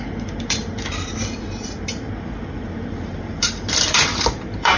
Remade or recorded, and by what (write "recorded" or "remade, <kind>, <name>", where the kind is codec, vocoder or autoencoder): remade, vocoder, BigVGAN v2